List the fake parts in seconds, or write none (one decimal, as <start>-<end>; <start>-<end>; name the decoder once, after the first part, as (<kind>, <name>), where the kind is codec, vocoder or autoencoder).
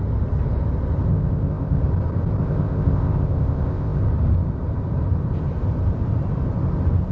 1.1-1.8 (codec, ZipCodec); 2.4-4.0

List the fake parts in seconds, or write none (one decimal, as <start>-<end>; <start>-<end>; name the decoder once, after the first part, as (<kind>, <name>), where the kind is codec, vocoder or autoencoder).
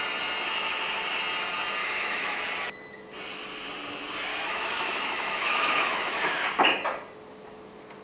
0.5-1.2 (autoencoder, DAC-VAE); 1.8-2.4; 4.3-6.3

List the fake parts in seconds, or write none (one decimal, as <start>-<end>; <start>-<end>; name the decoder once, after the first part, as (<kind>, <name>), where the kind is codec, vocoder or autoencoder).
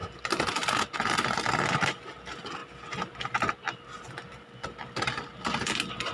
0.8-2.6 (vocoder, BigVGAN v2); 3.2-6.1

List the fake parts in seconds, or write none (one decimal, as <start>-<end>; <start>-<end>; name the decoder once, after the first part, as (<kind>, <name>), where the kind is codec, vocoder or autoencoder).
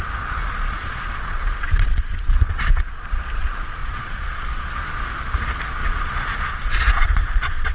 0.4-3.2 (vocoder, Vocos); 3.8-4.8; 5.8-7.7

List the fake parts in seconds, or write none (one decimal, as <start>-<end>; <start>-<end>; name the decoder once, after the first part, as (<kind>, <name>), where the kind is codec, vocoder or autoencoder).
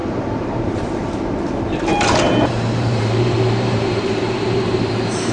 0.0-0.9 (vocoder, BigVGAN v2); 1.9-5.3